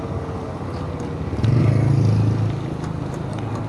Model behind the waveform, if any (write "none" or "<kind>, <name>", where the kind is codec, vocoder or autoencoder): none